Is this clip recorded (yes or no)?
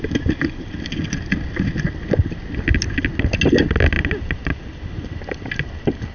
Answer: yes